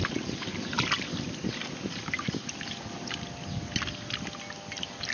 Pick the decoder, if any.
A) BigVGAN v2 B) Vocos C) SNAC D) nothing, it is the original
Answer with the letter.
D